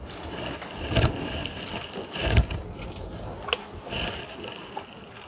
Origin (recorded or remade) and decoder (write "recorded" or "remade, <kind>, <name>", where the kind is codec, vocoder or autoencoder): recorded